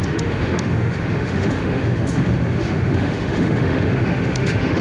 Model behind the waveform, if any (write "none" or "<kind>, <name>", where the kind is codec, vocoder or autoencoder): autoencoder, DAC-VAE